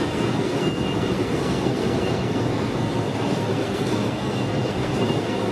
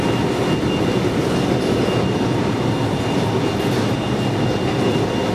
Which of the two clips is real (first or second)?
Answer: second